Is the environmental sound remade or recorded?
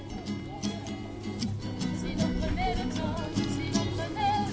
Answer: remade